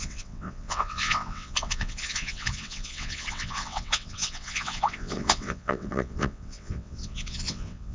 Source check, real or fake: fake